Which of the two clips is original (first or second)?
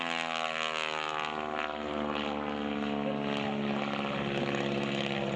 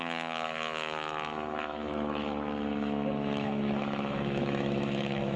first